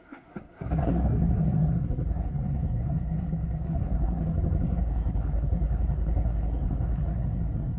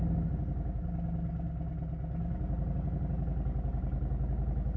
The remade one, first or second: first